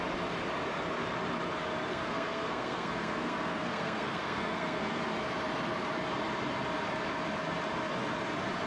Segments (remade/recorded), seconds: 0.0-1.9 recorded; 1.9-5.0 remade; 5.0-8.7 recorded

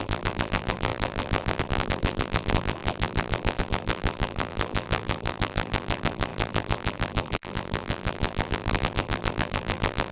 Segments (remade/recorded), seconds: 0.0-10.1 remade

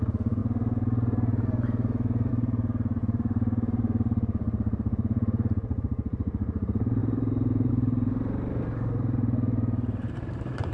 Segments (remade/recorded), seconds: 0.0-0.4 remade; 0.4-2.3 recorded; 2.3-10.7 remade

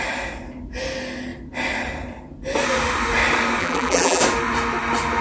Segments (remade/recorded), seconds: 0.0-3.6 recorded; 3.6-4.2 remade; 4.2-5.2 recorded

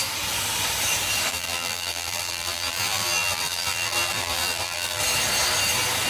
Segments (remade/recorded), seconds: 0.0-1.3 recorded; 1.3-5.0 remade; 5.0-6.1 recorded